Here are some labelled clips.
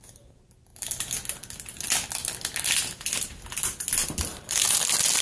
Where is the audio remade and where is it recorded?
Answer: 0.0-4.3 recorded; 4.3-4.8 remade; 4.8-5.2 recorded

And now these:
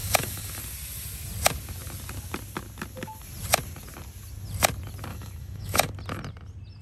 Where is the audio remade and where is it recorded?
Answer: 0.0-0.6 remade; 0.6-5.1 recorded; 5.1-5.9 remade; 5.9-6.8 recorded

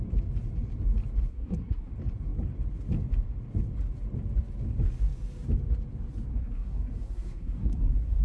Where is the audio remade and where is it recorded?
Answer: 0.0-1.3 recorded; 1.3-1.9 remade; 1.9-6.3 recorded; 6.3-8.2 remade